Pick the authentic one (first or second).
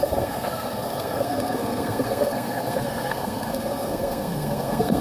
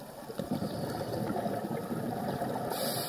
second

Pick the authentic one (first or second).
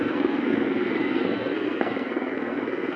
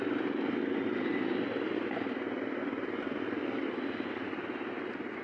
second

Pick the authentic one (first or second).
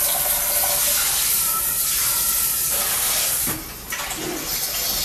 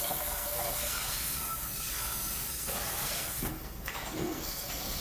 first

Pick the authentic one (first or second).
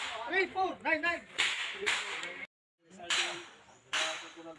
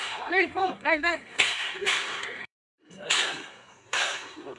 first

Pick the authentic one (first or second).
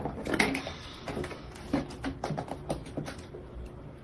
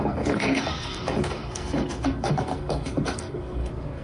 first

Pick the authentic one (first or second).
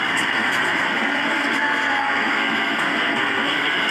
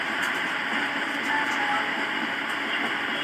second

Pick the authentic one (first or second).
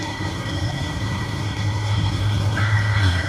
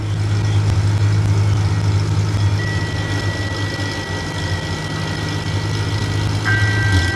second